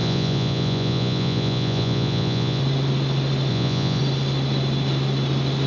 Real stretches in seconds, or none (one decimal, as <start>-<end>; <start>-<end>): 2.6-3.5; 4.0-5.7